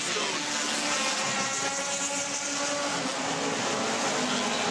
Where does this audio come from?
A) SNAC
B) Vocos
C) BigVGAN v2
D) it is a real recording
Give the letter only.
D